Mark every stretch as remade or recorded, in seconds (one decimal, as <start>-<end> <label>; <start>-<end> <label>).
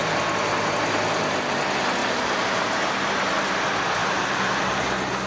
0.0-2.0 recorded; 2.0-2.7 remade; 2.7-4.0 recorded; 4.0-4.8 remade; 4.8-5.3 recorded